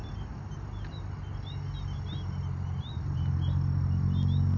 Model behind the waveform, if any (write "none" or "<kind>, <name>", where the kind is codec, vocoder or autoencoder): none